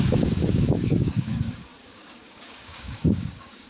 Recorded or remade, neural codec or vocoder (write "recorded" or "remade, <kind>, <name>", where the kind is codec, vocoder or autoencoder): remade, codec, DAC